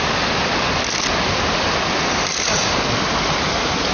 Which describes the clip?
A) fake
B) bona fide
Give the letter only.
B